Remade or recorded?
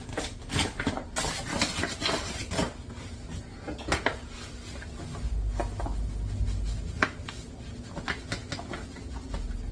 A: recorded